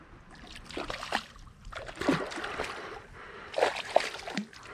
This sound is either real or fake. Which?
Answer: real